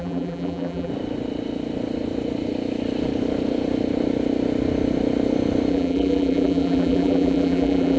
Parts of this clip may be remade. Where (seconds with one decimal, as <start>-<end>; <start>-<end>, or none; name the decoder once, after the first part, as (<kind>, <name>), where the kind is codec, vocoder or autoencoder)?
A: 0.0-0.9 (vocoder, BigVGAN v2); 5.7-8.0